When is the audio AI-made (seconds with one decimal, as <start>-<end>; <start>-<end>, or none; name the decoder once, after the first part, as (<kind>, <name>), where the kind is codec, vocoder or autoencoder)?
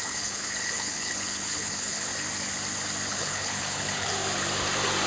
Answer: 0.0-2.1 (codec, HILCodec); 3.1-4.1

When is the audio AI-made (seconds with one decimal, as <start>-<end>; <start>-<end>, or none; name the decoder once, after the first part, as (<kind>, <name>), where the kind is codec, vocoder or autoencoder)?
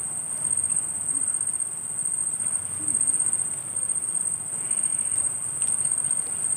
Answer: 2.2-4.2 (vocoder, BigVGAN v2)